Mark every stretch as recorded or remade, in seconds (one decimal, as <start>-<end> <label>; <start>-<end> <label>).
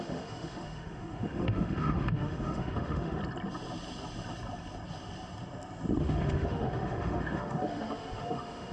0.0-3.2 remade; 3.2-6.0 recorded; 6.0-8.7 remade